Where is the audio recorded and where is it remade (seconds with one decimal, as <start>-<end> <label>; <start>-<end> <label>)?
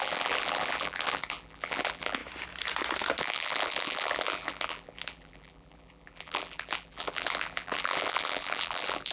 0.0-2.2 remade; 2.2-3.2 recorded; 3.2-9.1 remade